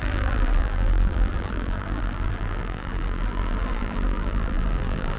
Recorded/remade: remade